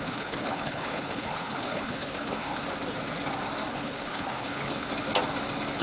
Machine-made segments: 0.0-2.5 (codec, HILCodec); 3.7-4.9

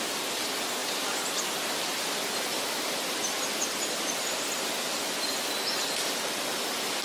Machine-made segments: 0.8-1.4 (vocoder, BigVGAN v2); 2.5-4.5

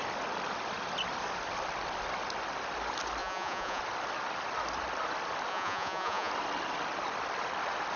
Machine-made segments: 3.2-3.8 (vocoder, Vocos); 5.5-6.3

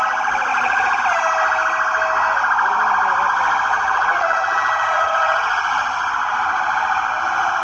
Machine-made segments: 0.5-1.0 (vocoder, Vocos); 3.7-6.1

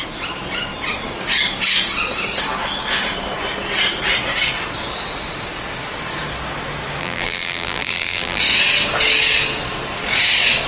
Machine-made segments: 7.0-8.4 (vocoder, BigVGAN v2)